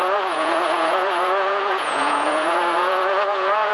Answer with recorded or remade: remade